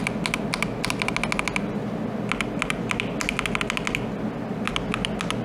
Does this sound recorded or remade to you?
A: recorded